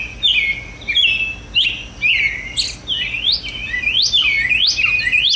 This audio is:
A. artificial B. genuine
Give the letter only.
B